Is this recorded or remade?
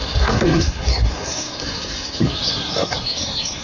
remade